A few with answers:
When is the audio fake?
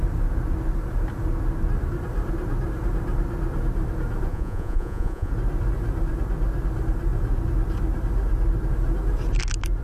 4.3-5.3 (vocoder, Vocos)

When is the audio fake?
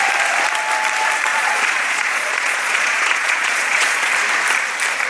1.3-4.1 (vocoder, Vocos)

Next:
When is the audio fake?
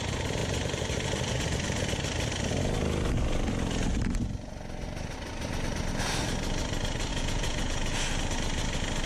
7.1-7.9 (vocoder, Vocos)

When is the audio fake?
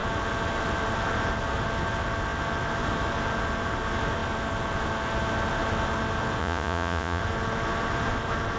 6.4-7.2 (vocoder, Vocos)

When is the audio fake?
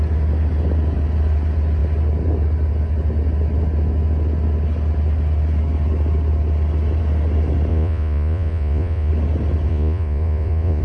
7.7-9.1 (vocoder, Vocos); 9.7-10.8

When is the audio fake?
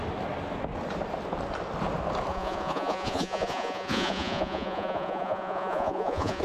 2.3-6.4 (vocoder, Vocos)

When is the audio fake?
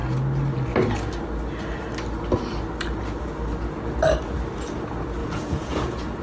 5.2-6.2 (vocoder, Vocos)